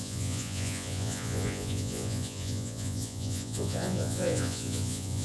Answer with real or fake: fake